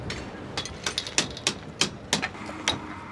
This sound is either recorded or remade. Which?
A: recorded